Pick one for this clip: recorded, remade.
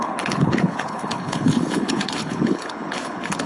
remade